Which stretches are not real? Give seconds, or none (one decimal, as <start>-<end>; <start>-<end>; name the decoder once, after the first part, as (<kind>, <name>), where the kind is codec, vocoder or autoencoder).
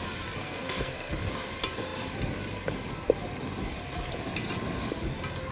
0.4-1.1 (codec, SNAC)